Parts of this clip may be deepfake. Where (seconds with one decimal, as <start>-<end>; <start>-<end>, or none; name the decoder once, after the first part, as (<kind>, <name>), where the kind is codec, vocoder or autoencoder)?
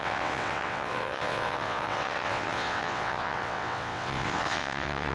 0.0-5.1 (vocoder, WaveNeXt)